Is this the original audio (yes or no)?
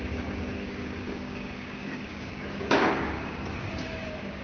no